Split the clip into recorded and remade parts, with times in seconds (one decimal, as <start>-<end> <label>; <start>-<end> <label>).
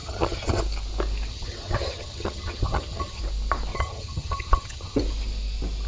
0.0-0.6 remade; 0.6-1.3 recorded; 1.3-3.2 remade; 3.2-3.7 recorded; 3.7-5.0 remade; 5.0-5.9 recorded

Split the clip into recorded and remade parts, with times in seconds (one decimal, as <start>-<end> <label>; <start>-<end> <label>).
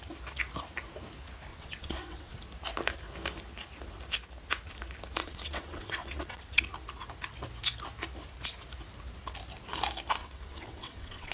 0.0-1.5 recorded; 1.5-2.3 remade; 2.3-5.2 recorded; 5.2-6.6 remade; 6.6-10.2 recorded; 10.2-11.3 remade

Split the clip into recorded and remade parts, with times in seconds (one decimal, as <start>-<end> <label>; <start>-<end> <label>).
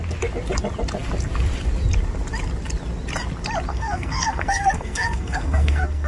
0.0-3.7 recorded; 3.7-6.1 remade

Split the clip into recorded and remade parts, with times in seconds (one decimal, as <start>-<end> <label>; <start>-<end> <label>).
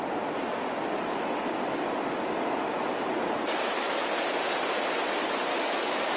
0.0-5.5 recorded; 5.5-6.2 remade